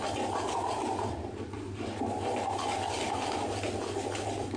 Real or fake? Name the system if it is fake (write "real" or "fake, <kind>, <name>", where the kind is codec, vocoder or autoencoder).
real